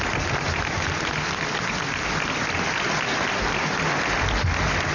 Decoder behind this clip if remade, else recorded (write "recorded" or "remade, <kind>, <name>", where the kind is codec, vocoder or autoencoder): recorded